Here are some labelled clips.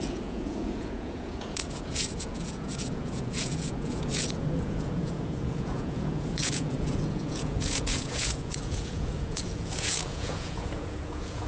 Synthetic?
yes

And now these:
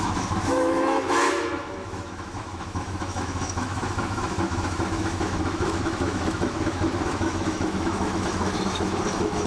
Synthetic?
yes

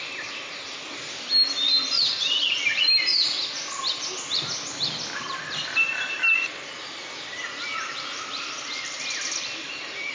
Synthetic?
no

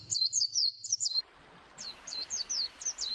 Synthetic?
yes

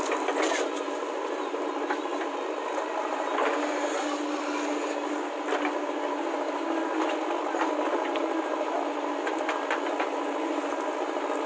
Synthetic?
no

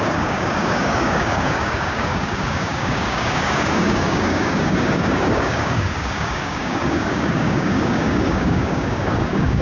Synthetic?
yes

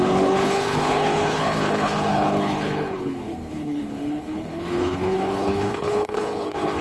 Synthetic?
yes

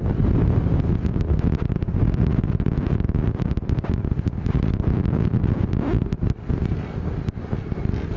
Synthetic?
no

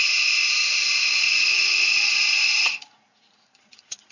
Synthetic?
yes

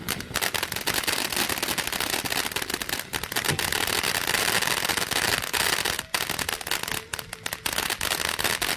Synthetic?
no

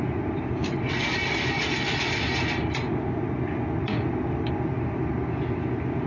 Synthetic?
no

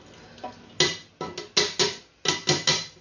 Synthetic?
no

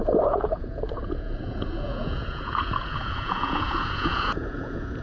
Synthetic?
yes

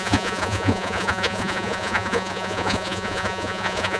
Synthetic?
yes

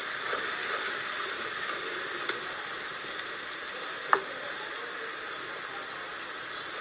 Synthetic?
no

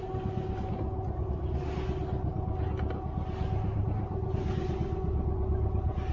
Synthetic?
no